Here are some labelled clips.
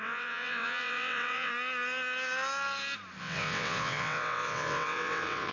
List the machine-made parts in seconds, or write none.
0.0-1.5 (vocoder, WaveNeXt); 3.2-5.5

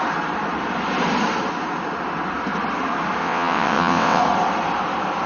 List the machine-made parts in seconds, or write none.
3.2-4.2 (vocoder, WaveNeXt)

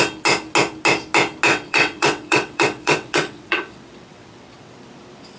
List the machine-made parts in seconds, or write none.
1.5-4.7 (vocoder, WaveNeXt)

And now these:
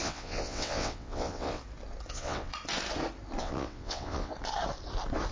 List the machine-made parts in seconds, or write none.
0.0-1.6 (vocoder, WaveNeXt); 2.1-2.5; 3.4-4.3

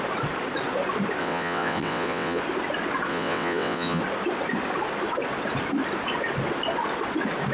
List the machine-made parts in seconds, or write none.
1.2-2.4 (vocoder, WaveNeXt); 3.1-4.0

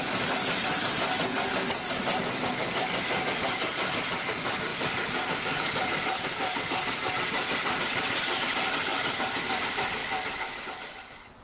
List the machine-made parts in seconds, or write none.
none